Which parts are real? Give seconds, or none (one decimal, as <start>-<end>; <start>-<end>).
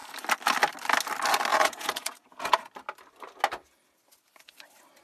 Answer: 0.0-1.5; 2.7-5.0